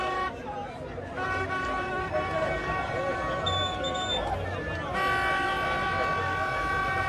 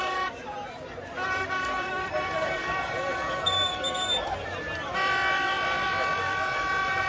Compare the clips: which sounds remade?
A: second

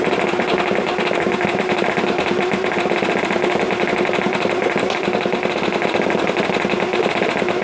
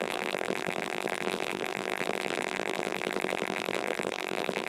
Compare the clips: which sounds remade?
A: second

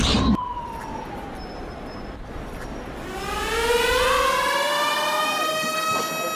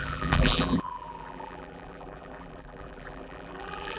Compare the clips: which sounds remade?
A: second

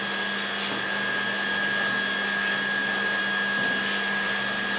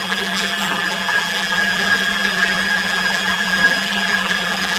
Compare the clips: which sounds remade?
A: second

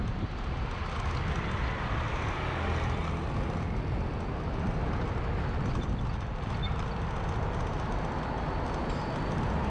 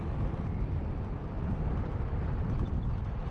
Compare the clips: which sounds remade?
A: second